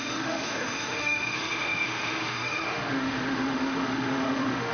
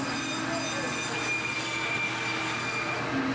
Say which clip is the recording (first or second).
second